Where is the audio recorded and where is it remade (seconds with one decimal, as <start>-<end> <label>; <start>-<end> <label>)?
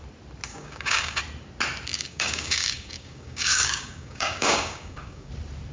0.0-0.5 recorded; 0.5-1.2 remade; 1.2-1.9 recorded; 1.9-5.3 remade; 5.3-5.7 recorded